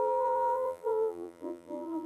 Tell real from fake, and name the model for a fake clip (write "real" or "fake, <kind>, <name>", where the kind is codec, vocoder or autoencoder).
fake, vocoder, BigVGAN v2